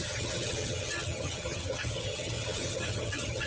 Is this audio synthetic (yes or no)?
yes